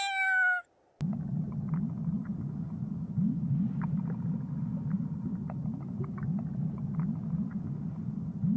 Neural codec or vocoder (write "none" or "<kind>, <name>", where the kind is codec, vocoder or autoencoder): none